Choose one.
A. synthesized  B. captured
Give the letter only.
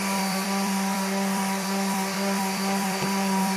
A